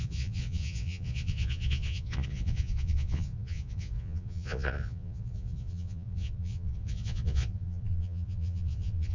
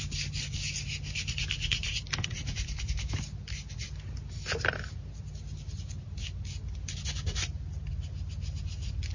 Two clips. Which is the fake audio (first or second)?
first